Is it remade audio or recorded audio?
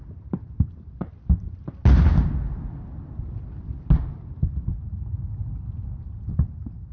recorded